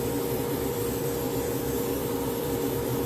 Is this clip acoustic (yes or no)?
no